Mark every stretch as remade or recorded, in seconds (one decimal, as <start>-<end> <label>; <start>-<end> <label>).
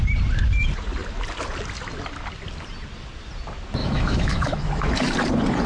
0.0-3.8 recorded; 3.8-4.9 remade; 4.9-5.7 recorded